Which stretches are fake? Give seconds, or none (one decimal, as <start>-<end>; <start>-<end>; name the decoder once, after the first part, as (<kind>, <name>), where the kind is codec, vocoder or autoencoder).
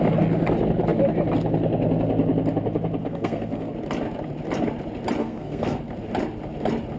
3.0-3.7 (codec, SNAC); 5.2-5.8